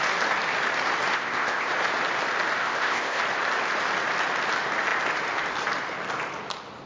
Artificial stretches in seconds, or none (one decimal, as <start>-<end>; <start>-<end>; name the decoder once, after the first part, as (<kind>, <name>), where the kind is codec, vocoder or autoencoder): 1.1-1.7 (codec, ZipCodec); 2.6-3.2